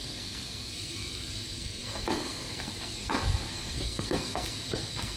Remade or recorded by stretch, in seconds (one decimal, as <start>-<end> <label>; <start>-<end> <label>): 0.0-5.2 remade

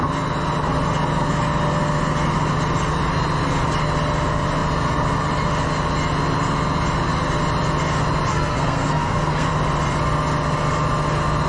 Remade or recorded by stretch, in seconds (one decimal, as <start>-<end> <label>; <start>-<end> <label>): 0.0-8.3 recorded; 8.3-9.5 remade; 9.5-11.5 recorded

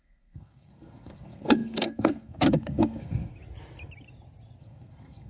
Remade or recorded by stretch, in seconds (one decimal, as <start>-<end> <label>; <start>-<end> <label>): 0.0-3.3 remade; 3.3-4.6 recorded; 4.6-5.3 remade

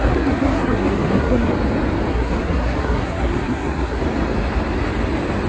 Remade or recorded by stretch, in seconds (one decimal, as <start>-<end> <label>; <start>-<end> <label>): 0.0-1.5 remade; 1.5-2.1 recorded; 2.1-4.0 remade; 4.0-5.5 recorded

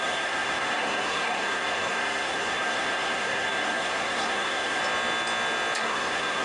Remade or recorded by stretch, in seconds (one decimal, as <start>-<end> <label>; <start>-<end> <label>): 0.0-4.8 remade; 4.8-5.8 recorded; 5.8-6.4 remade

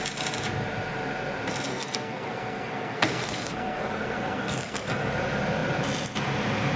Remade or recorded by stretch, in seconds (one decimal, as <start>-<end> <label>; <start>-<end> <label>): 0.0-1.7 recorded; 1.7-5.1 remade; 5.1-6.8 recorded

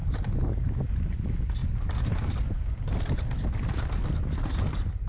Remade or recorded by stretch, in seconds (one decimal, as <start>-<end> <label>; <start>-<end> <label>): 0.0-5.1 recorded

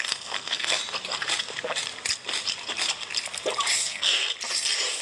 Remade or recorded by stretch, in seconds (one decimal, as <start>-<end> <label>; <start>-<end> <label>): 0.0-0.8 remade; 0.8-3.8 recorded; 3.8-4.2 remade; 4.2-5.0 recorded